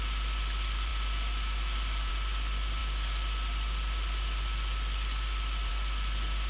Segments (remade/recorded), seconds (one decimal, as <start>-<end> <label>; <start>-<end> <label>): 0.0-6.5 recorded